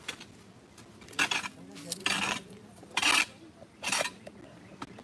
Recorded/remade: recorded